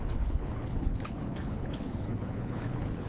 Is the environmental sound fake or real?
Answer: fake